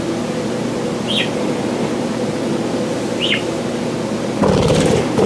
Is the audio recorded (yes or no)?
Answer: yes